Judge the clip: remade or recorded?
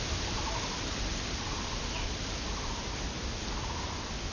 recorded